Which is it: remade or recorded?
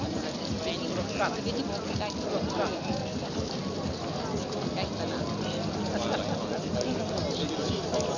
recorded